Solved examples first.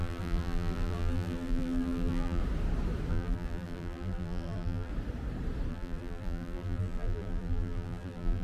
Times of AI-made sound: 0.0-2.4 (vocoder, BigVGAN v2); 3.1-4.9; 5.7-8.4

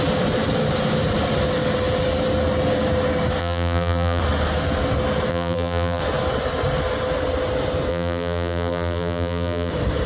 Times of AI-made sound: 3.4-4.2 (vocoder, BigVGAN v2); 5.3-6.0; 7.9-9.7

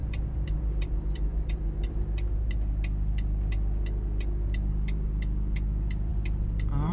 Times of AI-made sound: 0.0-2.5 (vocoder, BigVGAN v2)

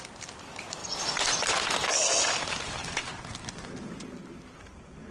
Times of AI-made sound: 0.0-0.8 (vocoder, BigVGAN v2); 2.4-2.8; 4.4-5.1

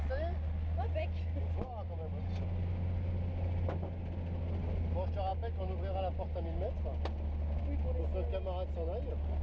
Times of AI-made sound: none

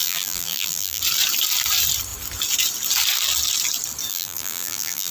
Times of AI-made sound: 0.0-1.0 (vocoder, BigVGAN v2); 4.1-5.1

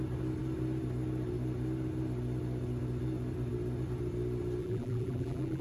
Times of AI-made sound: 4.6-5.6 (vocoder, BigVGAN v2)